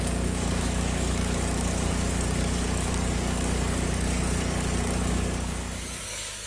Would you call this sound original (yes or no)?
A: no